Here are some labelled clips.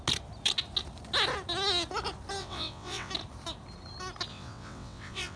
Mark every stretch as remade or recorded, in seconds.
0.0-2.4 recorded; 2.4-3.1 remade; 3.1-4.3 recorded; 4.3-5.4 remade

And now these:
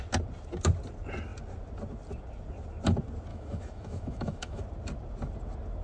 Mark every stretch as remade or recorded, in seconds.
0.0-3.3 recorded; 3.3-4.6 remade; 4.6-5.8 recorded

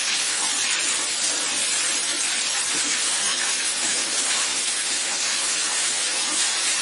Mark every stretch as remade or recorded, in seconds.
0.0-0.4 remade; 0.4-2.7 recorded; 2.7-6.8 remade

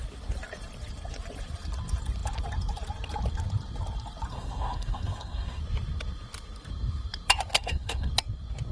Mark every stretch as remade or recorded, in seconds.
0.0-4.3 recorded; 4.3-5.6 remade; 5.6-7.5 recorded; 7.5-8.1 remade; 8.1-8.7 recorded

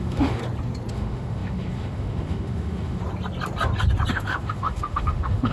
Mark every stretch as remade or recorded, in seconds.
0.0-0.4 remade; 0.4-0.9 recorded; 0.9-3.0 remade; 3.0-4.1 recorded; 4.1-5.5 remade

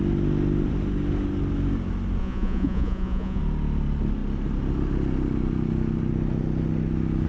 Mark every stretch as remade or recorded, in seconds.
0.0-2.2 recorded; 2.2-3.4 remade; 3.4-7.3 recorded

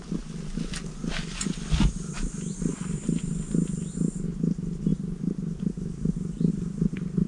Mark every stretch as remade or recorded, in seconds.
0.0-2.7 recorded; 2.7-3.3 remade; 3.3-7.3 recorded

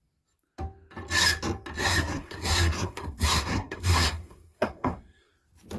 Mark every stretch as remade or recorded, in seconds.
0.0-1.8 recorded; 1.8-5.3 remade; 5.3-5.8 recorded